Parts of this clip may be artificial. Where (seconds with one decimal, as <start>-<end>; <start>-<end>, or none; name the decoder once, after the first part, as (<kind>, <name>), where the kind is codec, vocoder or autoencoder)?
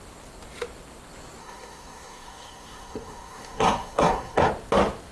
1.4-4.5 (codec, SNAC)